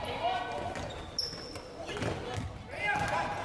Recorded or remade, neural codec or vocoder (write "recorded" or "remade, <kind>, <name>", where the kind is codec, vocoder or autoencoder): recorded